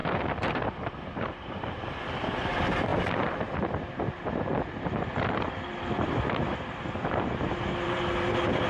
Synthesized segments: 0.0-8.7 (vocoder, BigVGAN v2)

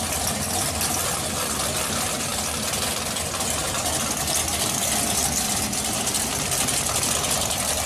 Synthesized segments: none

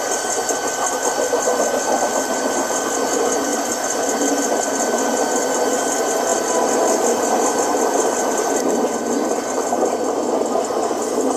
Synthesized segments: 3.5-4.3 (vocoder, BigVGAN v2); 6.3-7.6

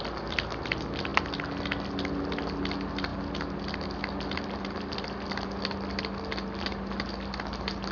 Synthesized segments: none

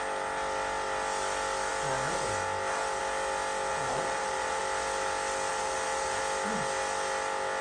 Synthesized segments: 3.7-4.6 (vocoder, BigVGAN v2); 5.5-6.2

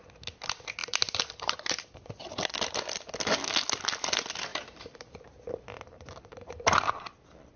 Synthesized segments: 0.8-2.1 (vocoder, BigVGAN v2); 4.5-6.5

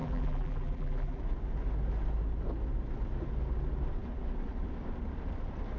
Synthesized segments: 0.0-1.2 (vocoder, BigVGAN v2)

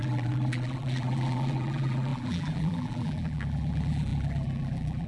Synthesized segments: 0.0-5.1 (vocoder, BigVGAN v2)